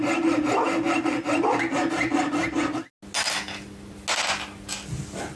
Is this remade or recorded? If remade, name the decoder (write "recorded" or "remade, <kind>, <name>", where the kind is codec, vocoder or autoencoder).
recorded